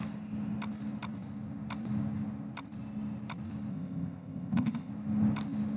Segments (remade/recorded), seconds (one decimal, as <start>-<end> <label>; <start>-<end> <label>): 0.0-3.7 recorded; 3.7-4.9 remade; 4.9-5.8 recorded